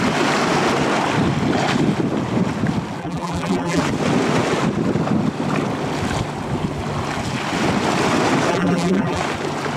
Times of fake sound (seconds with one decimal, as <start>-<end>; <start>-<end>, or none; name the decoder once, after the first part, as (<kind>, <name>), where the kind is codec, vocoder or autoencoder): 3.0-3.8 (vocoder, BigVGAN v2); 8.5-9.2